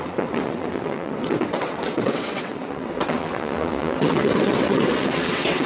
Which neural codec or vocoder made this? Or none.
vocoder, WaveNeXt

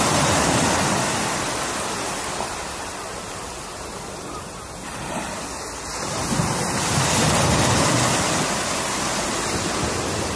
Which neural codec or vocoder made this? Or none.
none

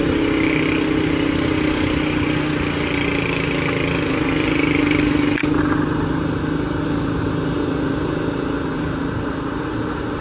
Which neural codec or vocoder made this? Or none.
none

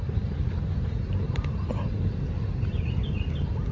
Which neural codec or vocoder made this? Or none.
none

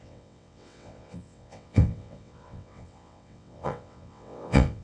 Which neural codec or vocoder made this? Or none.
vocoder, WaveNeXt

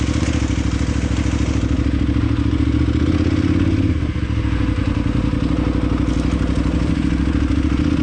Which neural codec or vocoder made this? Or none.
none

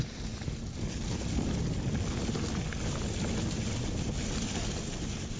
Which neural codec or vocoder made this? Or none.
none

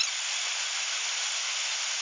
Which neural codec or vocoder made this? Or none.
none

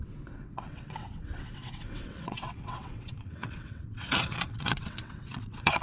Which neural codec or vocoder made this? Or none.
vocoder, WaveNeXt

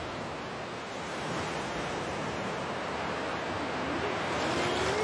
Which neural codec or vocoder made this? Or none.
none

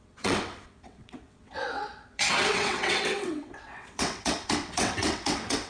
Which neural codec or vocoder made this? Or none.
vocoder, WaveNeXt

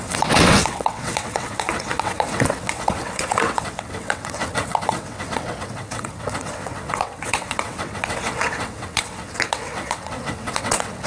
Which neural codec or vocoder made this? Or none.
vocoder, WaveNeXt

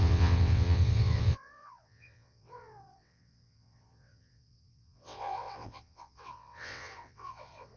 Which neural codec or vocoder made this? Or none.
vocoder, WaveNeXt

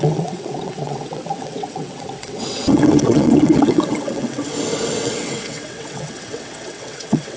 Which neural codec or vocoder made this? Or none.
vocoder, WaveNeXt